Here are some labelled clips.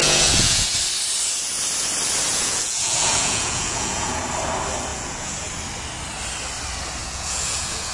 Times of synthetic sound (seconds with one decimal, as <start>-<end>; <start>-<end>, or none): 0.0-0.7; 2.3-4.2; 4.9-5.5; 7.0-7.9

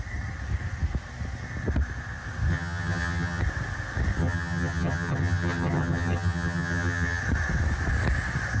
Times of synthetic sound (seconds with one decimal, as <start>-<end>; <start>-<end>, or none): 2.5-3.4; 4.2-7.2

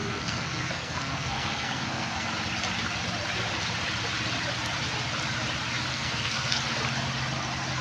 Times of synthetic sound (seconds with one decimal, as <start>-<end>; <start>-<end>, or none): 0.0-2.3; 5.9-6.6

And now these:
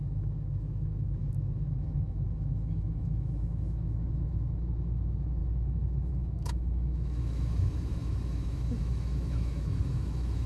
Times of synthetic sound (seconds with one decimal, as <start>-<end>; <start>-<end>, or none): 0.0-10.5

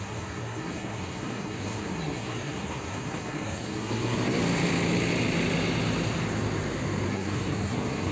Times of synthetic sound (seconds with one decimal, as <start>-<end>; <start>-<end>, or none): 0.0-4.4; 7.1-8.1

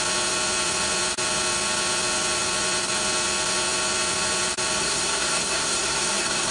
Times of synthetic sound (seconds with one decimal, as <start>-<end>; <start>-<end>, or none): 4.8-6.5

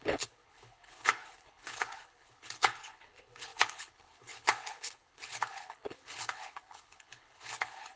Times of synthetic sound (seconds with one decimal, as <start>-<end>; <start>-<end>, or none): 0.0-8.0